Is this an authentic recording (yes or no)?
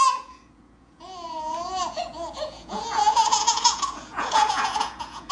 no